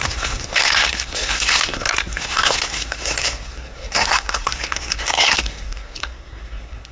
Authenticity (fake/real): fake